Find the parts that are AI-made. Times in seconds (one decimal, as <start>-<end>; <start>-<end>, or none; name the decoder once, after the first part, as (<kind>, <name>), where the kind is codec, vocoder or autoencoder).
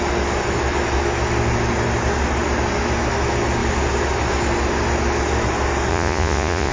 5.9-6.7 (vocoder, Vocos)